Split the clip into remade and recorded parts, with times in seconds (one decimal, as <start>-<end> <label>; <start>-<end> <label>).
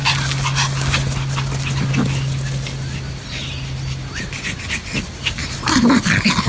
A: 0.0-6.5 recorded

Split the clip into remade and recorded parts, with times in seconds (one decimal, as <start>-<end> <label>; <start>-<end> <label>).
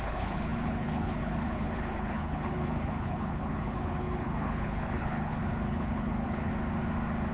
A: 0.0-6.5 remade; 6.5-7.3 recorded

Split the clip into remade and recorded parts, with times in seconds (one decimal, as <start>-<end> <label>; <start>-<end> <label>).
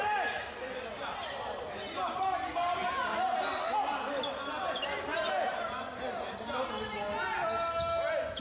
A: 0.0-8.4 recorded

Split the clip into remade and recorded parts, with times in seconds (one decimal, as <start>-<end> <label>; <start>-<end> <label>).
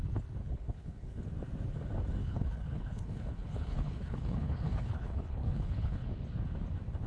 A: 0.0-0.4 recorded; 0.4-1.2 remade; 1.2-2.2 recorded; 2.2-6.1 remade; 6.1-7.1 recorded